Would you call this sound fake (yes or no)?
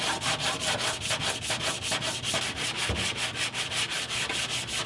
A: no